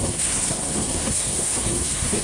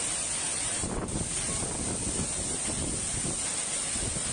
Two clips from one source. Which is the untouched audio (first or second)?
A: second